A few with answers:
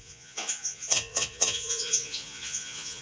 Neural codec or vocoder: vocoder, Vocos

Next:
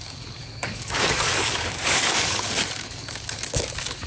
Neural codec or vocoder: codec, DAC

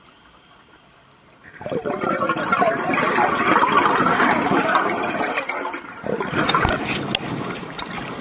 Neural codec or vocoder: vocoder, BigVGAN v2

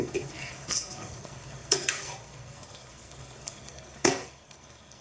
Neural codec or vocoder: codec, SNAC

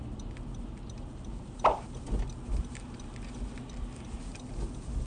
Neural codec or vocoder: none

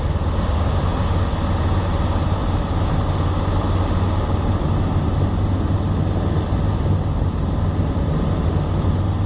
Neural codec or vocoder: none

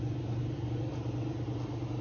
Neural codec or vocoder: none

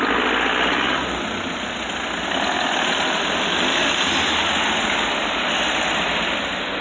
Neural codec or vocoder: none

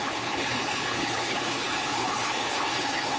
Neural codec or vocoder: codec, HILCodec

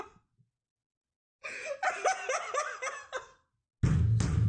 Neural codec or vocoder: none